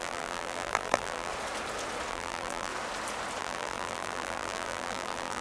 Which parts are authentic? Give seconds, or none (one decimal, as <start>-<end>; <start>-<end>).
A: 1.3-2.1; 2.7-3.4

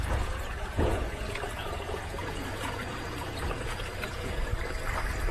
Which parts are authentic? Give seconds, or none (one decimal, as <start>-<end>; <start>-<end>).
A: 4.5-5.3

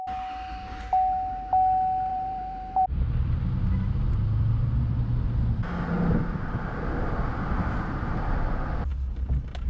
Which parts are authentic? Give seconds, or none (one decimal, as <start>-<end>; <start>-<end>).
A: 0.0-2.1; 3.4-9.7

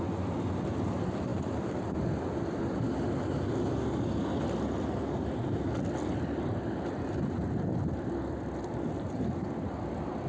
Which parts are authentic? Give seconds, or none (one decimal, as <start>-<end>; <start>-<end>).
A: 0.0-1.3; 2.7-10.3